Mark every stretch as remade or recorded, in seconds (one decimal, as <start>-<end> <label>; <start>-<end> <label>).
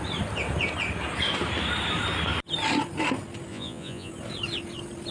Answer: 0.0-3.5 recorded; 3.5-4.1 remade; 4.1-5.1 recorded